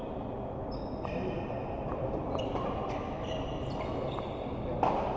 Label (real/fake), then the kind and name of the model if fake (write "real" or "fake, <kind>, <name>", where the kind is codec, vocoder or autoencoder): real